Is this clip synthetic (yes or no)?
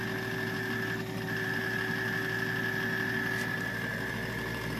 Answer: no